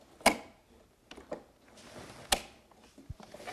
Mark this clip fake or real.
real